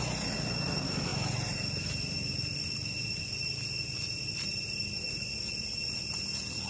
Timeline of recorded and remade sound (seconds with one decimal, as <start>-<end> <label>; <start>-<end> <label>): 0.0-6.7 recorded